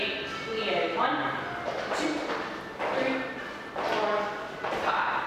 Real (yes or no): yes